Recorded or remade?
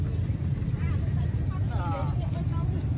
recorded